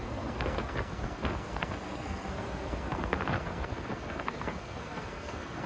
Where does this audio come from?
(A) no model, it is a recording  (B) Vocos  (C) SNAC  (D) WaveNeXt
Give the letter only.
C